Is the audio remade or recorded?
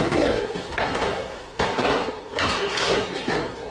remade